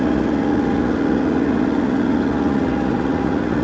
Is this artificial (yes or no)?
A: yes